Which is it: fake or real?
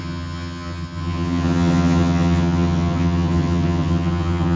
fake